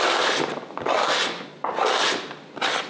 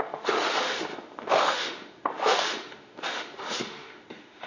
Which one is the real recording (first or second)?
first